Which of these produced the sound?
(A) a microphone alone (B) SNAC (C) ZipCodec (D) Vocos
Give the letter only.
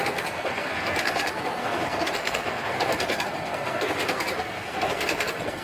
B